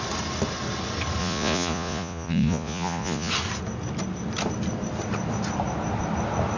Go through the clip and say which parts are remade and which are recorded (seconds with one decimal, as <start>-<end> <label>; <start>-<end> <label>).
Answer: 0.0-1.2 recorded; 1.2-3.3 remade; 3.3-6.6 recorded